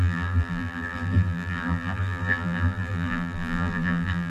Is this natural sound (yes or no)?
no